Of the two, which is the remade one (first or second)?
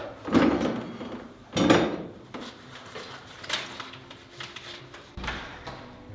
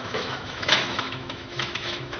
second